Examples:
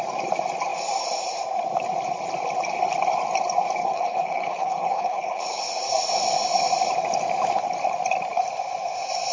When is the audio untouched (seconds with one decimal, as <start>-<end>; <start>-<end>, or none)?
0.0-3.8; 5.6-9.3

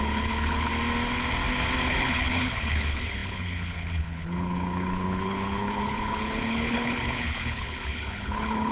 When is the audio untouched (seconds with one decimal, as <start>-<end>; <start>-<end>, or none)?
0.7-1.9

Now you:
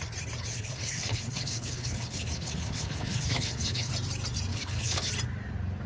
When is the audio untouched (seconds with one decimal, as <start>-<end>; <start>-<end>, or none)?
0.0-0.5; 3.9-4.5; 5.1-5.9